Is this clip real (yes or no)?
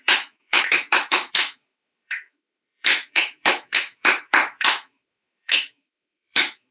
no